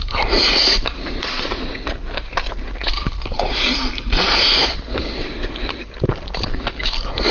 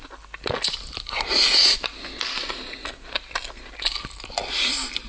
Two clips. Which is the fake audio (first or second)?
first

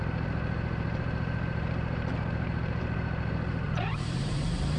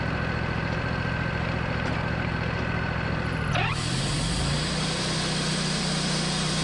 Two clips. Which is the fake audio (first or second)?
first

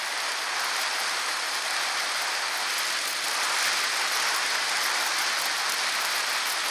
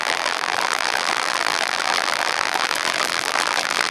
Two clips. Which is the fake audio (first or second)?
second